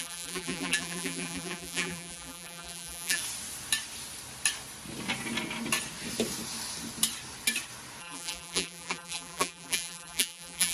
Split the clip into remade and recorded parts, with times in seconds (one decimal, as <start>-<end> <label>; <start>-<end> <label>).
0.0-3.2 remade; 3.2-8.0 recorded; 8.0-10.7 remade